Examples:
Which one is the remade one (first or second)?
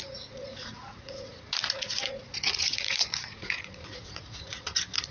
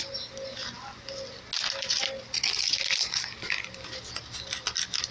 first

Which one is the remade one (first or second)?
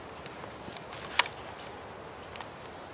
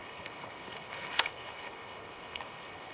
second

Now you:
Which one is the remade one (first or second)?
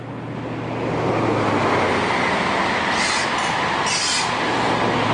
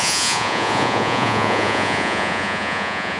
second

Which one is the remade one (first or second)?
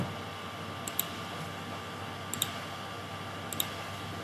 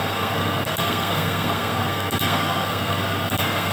second